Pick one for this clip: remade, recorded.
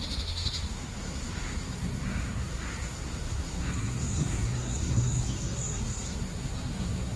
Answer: remade